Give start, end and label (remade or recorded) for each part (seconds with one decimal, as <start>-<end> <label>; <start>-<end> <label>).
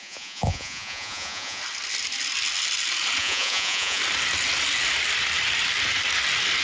0.0-1.6 remade; 1.6-3.2 recorded; 3.2-4.0 remade; 4.0-6.6 recorded